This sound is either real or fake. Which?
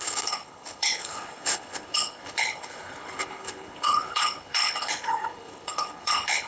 fake